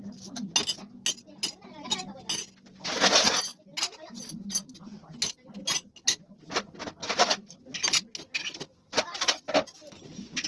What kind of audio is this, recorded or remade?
recorded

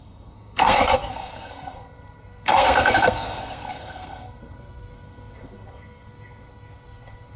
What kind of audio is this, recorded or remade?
remade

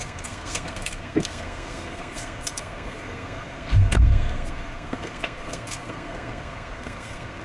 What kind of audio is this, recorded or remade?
remade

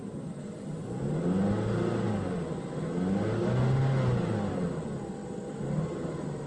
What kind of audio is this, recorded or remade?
recorded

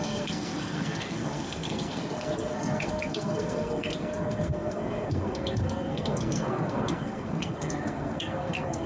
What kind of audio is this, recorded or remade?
remade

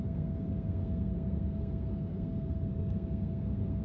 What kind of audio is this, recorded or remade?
remade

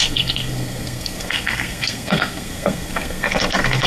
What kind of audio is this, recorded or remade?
remade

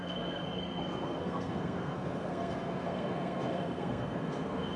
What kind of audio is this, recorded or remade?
remade